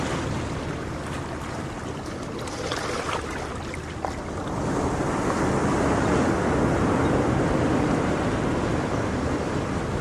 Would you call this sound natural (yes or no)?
yes